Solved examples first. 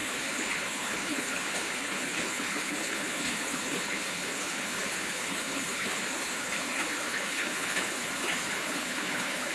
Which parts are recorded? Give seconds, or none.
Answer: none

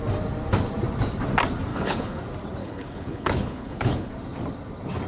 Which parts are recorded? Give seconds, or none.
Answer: 0.0-1.7; 2.2-2.6; 4.1-5.1